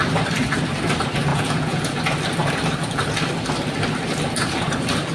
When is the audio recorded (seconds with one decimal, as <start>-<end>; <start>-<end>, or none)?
0.0-1.3; 2.0-5.1